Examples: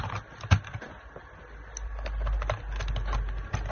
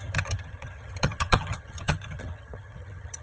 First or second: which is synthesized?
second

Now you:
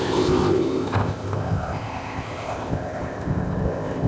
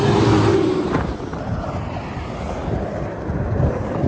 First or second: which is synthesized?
first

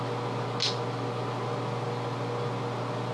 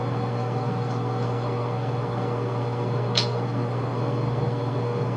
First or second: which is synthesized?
second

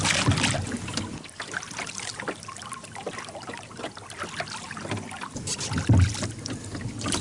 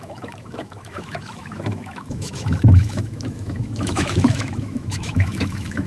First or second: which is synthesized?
second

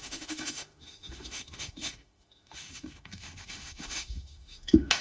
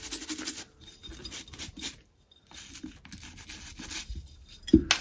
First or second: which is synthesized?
first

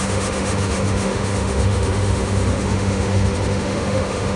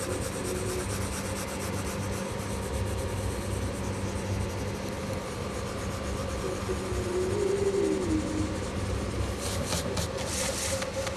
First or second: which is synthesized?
first